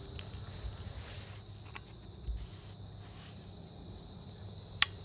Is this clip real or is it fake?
real